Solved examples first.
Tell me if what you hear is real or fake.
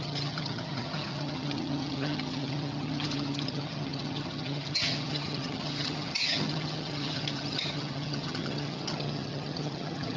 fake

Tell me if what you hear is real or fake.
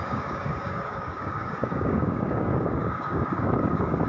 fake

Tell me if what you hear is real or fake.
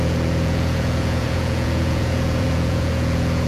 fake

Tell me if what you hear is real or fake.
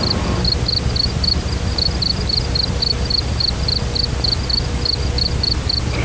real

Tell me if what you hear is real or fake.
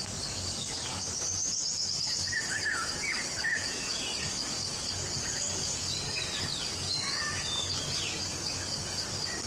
fake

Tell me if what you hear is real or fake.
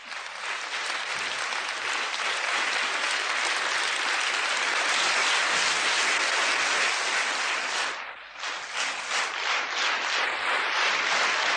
real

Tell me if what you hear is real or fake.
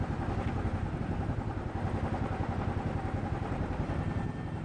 real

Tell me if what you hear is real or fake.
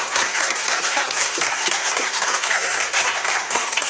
fake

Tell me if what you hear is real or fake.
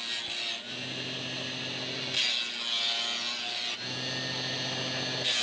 real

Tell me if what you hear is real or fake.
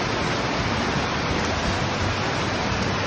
real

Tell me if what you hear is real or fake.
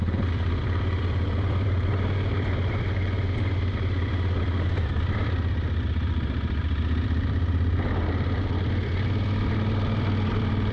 fake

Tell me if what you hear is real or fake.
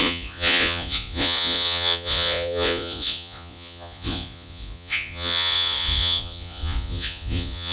fake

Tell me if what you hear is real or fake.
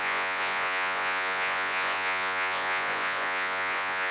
fake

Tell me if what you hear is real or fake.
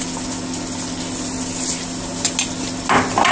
real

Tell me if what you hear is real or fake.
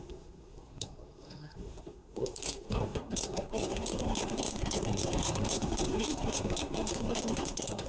fake